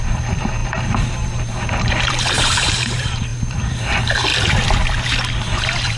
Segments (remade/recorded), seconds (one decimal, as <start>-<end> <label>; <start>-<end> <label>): 0.0-4.3 remade; 4.3-5.4 recorded; 5.4-6.0 remade